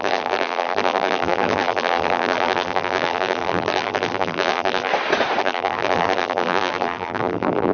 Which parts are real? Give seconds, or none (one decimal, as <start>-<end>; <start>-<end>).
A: 4.9-5.4